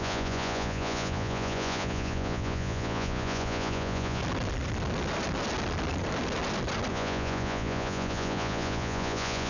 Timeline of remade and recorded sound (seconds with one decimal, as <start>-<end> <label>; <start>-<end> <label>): 0.0-4.2 remade; 4.2-6.9 recorded; 6.9-9.5 remade